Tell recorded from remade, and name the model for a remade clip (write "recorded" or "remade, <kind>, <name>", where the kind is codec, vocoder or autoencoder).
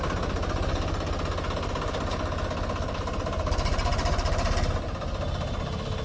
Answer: recorded